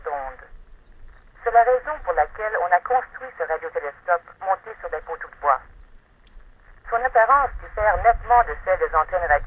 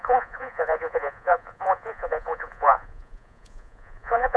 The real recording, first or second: first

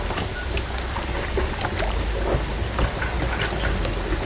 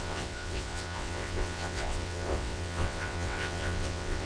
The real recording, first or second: first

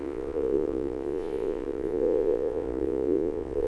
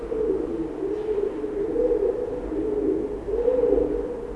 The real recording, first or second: second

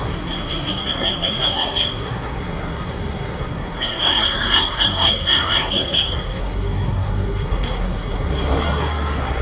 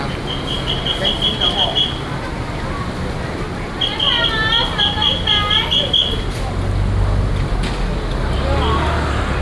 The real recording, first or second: second